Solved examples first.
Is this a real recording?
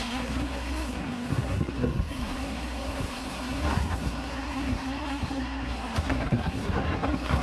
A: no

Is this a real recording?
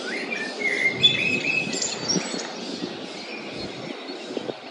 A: yes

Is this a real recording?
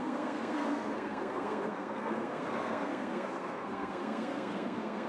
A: no